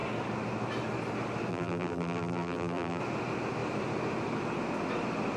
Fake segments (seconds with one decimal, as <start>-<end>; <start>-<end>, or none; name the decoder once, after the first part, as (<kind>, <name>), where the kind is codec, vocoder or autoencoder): 1.5-3.0 (vocoder, BigVGAN v2)